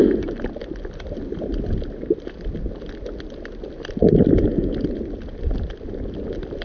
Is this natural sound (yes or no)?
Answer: yes